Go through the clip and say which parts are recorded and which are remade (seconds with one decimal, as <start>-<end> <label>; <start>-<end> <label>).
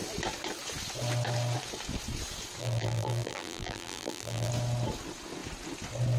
0.0-2.6 recorded; 2.6-4.5 remade; 4.5-6.2 recorded